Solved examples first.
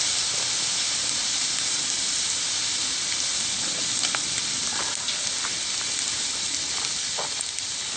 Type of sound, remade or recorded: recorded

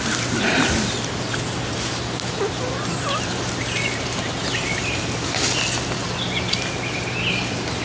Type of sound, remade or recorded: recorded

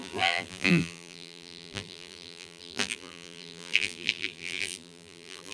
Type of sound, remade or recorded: remade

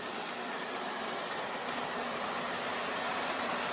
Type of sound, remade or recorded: recorded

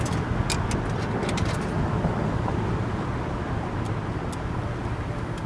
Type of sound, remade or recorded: recorded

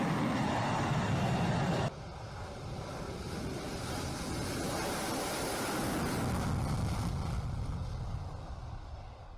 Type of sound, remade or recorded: recorded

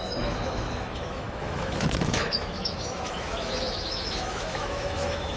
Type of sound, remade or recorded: remade